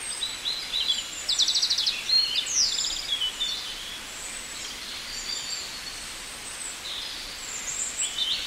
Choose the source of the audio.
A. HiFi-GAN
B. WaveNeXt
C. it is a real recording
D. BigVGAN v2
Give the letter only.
C